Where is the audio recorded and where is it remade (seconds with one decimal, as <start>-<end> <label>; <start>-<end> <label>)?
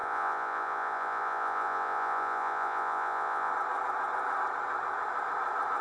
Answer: 0.0-3.5 remade; 3.5-5.8 recorded